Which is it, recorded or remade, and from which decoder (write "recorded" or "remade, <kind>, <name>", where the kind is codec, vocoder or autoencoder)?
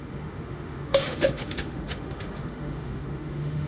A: remade, autoencoder, DAC-VAE